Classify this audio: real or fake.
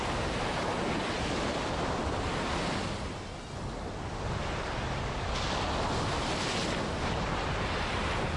real